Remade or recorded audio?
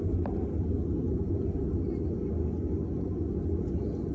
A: recorded